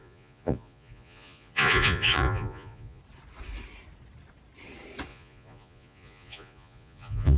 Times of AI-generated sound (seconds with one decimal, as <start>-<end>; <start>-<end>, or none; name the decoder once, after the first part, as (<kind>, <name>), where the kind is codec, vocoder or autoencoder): 0.0-3.0 (vocoder, Vocos); 5.1-7.4